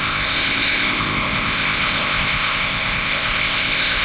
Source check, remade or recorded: remade